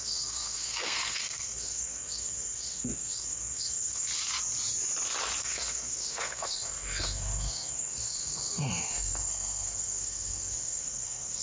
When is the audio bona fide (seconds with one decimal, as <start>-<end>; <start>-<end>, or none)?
4.1-5.4